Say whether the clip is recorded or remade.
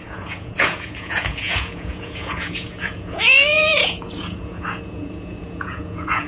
remade